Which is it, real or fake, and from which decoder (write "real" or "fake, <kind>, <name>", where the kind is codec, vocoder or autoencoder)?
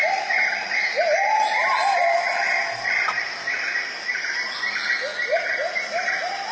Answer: real